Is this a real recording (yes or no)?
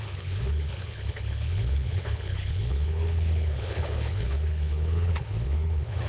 no